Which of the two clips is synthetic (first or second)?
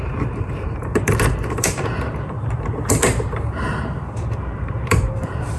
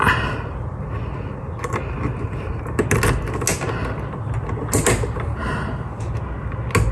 first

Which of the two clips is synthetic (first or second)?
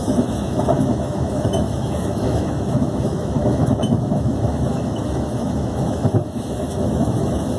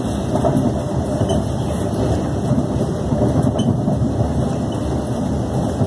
first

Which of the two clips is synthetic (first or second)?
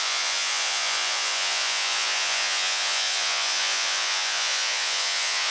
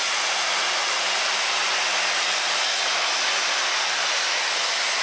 first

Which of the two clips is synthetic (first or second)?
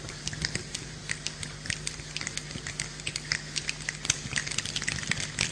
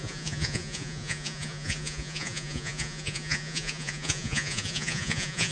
second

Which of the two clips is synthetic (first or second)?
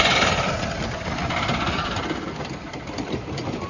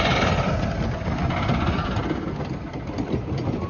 first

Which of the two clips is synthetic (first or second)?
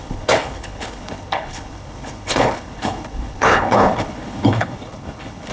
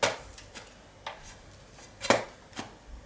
first